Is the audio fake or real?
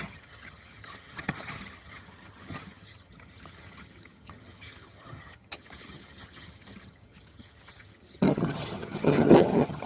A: fake